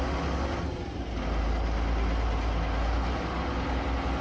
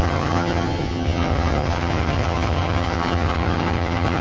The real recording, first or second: first